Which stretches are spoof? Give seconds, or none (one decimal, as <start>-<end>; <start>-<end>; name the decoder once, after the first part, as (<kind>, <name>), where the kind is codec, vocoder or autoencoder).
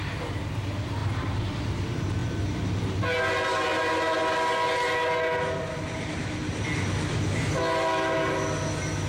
none